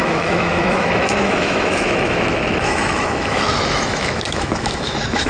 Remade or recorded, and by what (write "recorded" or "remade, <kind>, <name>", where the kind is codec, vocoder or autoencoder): remade, autoencoder, DAC-VAE